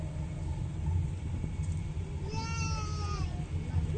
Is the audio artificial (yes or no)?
no